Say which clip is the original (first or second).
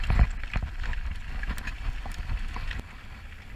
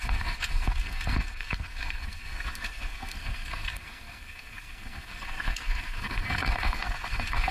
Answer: first